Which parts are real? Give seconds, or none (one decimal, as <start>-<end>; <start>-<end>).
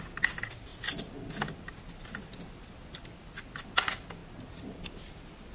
0.0-5.5